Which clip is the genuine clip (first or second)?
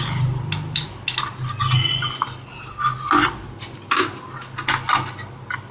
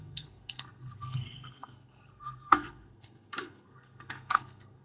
first